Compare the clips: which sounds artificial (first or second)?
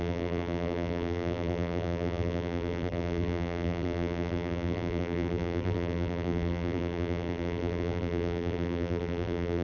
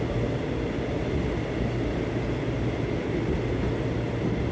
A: first